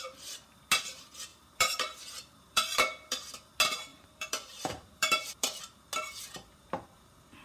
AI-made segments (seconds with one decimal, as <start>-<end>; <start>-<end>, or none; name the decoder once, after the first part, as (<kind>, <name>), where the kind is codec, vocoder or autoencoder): 1.3-3.5 (vocoder, BigVGAN v2); 3.9-5.6